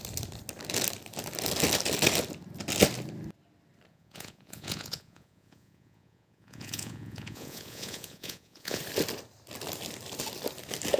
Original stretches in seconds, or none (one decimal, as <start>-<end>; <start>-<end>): 0.0-3.9; 8.8-11.0